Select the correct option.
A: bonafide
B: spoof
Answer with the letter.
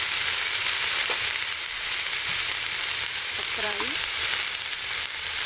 B